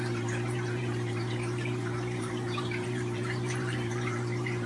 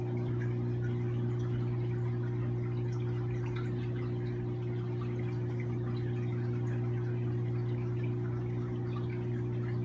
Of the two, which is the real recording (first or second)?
second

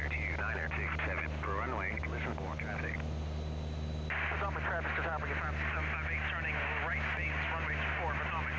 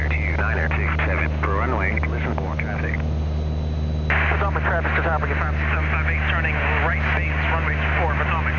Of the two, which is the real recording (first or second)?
second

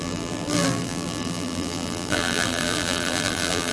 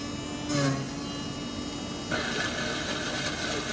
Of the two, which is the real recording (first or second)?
second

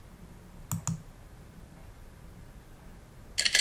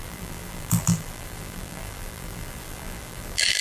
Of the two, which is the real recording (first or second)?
first